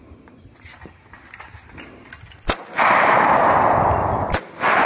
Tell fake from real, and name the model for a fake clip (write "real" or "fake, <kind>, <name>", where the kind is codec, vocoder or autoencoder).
real